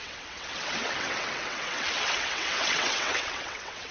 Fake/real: fake